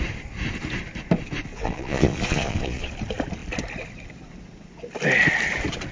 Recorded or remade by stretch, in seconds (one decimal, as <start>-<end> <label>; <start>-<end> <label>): 0.0-1.5 recorded; 1.5-2.9 remade; 2.9-5.9 recorded